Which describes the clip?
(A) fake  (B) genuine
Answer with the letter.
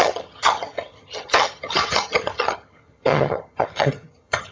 A